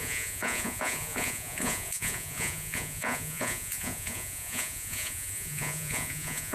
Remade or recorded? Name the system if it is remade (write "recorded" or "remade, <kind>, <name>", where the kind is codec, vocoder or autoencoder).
remade, vocoder, Vocos